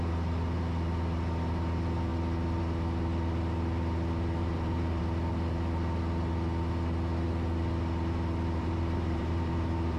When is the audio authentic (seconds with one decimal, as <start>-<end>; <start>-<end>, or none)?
0.0-4.4; 5.0-8.6